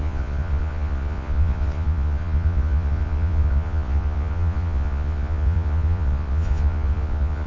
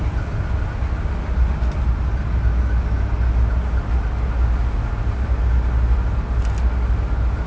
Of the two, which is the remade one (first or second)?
first